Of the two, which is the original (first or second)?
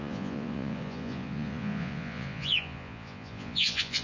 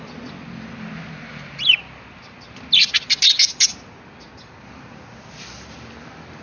second